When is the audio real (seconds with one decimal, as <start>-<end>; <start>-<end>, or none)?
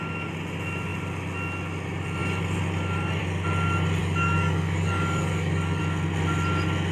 0.0-4.0; 5.8-6.9